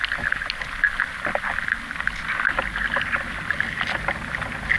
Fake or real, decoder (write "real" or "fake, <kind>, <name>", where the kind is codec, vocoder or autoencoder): real